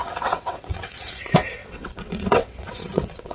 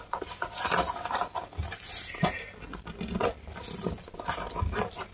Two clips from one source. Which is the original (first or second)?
second